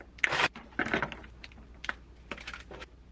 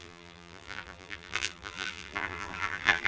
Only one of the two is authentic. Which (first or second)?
first